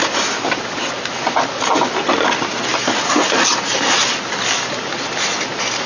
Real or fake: real